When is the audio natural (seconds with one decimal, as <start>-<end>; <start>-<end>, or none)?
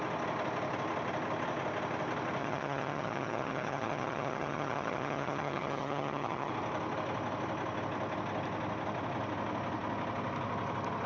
0.0-2.4; 6.5-11.1